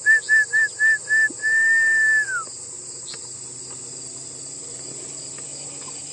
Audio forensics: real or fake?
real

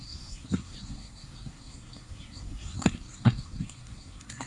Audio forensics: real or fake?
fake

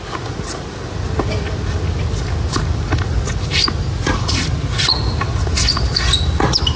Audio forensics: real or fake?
real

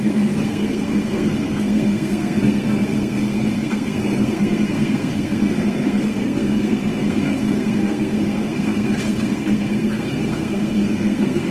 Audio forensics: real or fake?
fake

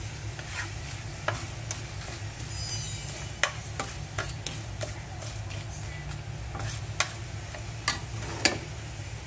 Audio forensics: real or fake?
real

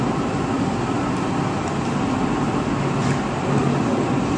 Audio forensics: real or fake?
real